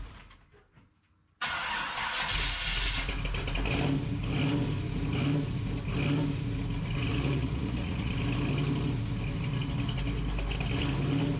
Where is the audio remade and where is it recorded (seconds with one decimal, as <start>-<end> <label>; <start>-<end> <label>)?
0.0-7.1 recorded; 7.1-8.1 remade; 8.1-11.4 recorded